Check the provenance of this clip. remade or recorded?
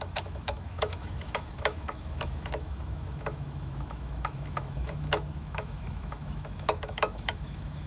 remade